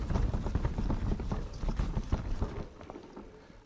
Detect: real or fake real